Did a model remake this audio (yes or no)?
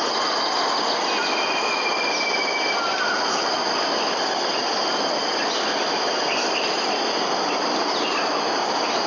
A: no